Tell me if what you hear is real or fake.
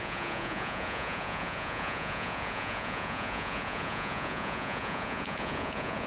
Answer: fake